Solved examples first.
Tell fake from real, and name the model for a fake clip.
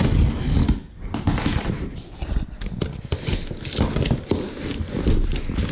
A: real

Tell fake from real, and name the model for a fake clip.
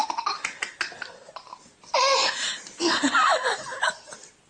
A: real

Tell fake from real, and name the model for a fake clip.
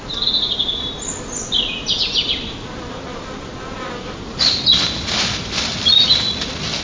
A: real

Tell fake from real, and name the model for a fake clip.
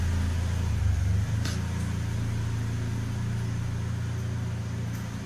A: real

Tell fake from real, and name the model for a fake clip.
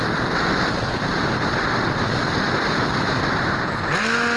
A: real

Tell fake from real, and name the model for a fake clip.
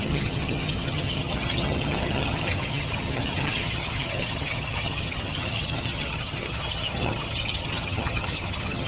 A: fake, vocoder, HiFi-GAN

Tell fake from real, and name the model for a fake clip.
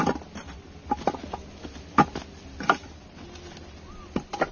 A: real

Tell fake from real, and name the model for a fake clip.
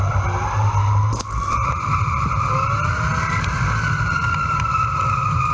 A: real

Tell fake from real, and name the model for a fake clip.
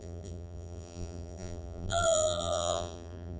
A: fake, vocoder, BigVGAN v2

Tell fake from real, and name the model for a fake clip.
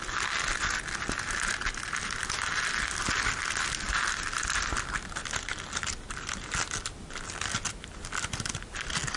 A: real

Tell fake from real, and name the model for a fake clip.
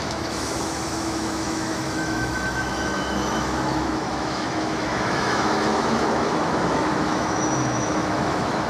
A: fake, autoencoder, DAC-VAE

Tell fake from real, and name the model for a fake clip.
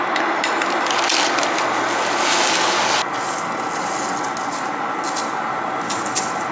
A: real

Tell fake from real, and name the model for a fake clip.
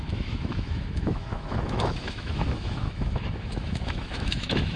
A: fake, autoencoder, DAC-VAE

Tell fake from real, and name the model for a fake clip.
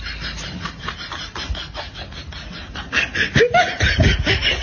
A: real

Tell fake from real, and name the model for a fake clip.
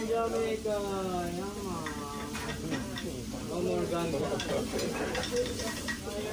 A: real